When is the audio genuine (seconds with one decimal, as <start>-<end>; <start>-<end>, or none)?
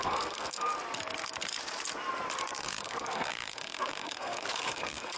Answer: 0.7-2.6